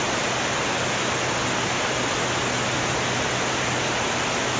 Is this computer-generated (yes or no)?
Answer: no